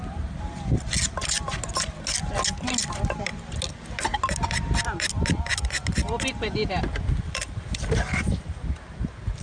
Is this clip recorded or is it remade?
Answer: recorded